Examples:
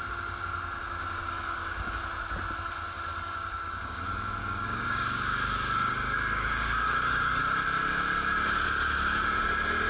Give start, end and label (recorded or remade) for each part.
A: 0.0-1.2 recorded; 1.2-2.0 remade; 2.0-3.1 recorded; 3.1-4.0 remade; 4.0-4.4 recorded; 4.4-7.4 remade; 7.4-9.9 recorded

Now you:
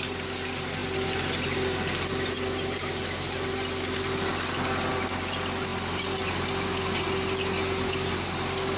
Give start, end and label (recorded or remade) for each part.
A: 0.0-8.8 recorded

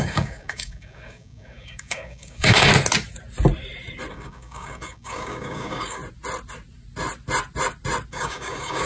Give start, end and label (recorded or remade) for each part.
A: 0.0-2.7 remade; 2.7-4.1 recorded; 4.1-6.0 remade; 6.0-8.1 recorded; 8.1-8.9 remade

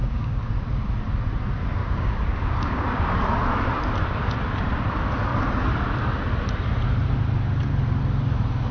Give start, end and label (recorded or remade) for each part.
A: 0.0-0.5 remade; 0.5-1.8 recorded; 1.8-3.1 remade; 3.1-8.7 recorded